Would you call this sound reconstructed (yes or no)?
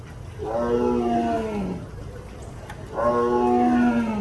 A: no